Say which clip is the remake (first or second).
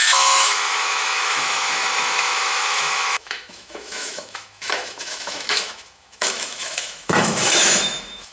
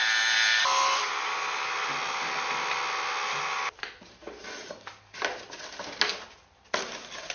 first